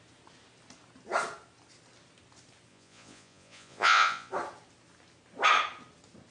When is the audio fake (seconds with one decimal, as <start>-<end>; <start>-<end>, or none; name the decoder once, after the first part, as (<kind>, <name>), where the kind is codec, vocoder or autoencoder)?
2.7-4.3 (vocoder, Vocos)